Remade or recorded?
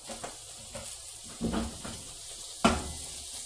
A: recorded